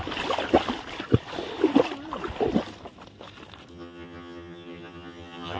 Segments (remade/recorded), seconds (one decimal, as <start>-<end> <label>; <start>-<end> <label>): 0.0-3.7 recorded; 3.7-5.6 remade